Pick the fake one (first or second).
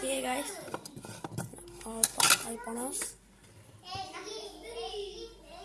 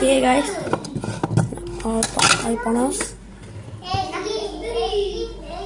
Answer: first